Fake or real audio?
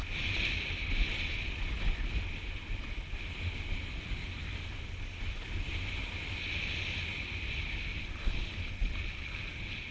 real